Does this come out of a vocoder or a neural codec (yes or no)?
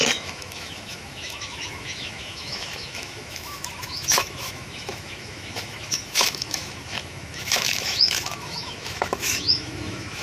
yes